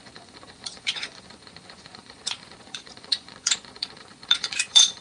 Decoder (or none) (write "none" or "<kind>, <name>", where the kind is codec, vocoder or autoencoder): vocoder, Vocos